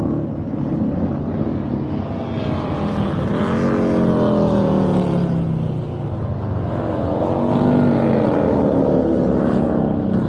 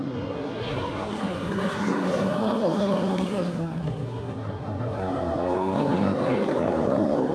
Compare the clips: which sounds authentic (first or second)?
first